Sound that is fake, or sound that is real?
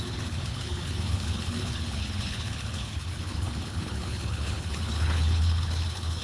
fake